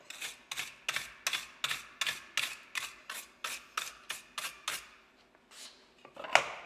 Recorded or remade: recorded